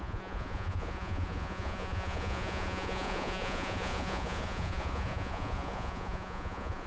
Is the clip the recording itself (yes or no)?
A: no